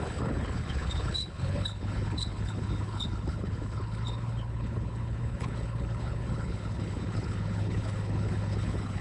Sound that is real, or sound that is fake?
fake